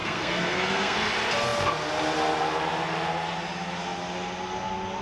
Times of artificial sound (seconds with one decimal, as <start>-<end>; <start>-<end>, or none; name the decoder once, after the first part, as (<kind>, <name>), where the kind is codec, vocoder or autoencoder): 0.0-1.1 (codec, SNAC)